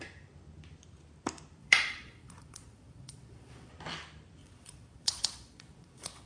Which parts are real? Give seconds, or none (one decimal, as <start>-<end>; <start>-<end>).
0.0-1.6; 3.7-4.4